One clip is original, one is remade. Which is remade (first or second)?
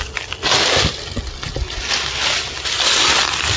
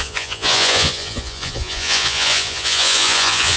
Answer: second